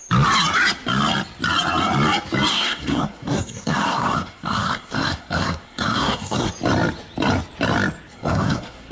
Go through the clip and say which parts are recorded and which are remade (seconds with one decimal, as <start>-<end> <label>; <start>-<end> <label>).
0.0-2.5 recorded; 2.5-6.5 remade; 6.5-8.1 recorded; 8.1-8.9 remade